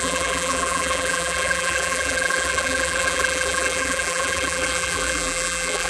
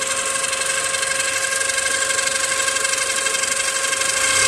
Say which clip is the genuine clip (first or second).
second